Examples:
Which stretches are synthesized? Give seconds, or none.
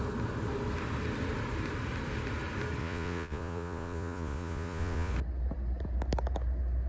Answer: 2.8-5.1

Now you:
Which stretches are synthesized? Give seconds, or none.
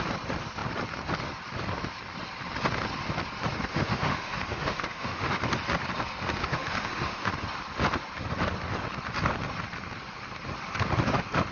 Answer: 3.7-5.4; 6.4-7.3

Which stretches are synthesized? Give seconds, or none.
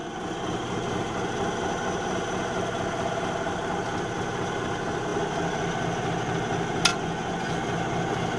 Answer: 6.9-7.5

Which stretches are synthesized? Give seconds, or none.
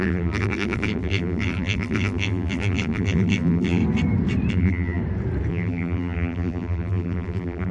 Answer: 0.0-3.8; 4.5-5.0; 5.5-7.7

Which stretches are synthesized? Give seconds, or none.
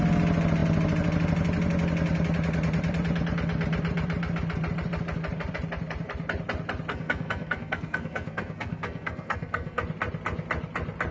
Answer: 6.9-9.8